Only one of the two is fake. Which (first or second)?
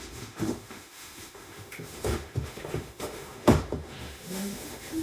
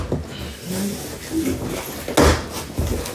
first